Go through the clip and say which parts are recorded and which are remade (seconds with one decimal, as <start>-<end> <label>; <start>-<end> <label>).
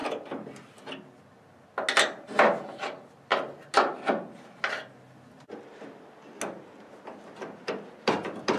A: 0.0-8.6 recorded